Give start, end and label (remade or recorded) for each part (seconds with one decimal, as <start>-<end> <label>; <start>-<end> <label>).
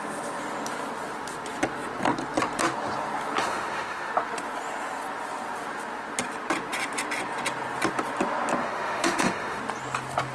0.0-3.4 recorded; 3.4-4.1 remade; 4.1-8.6 recorded; 8.6-9.6 remade; 9.6-10.3 recorded